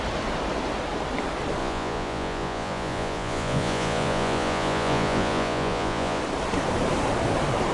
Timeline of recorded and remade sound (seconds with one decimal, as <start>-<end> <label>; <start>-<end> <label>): 0.0-1.6 recorded; 1.6-6.2 remade; 6.2-7.7 recorded